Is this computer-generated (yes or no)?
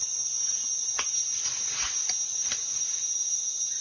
no